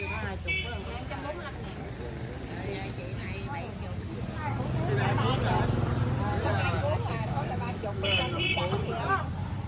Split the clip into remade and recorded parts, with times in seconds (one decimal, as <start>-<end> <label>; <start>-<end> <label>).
0.0-7.1 recorded; 7.1-8.2 remade; 8.2-9.7 recorded